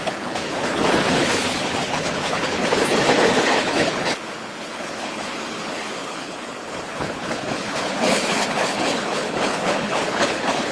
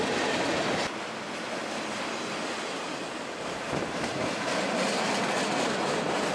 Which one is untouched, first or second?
second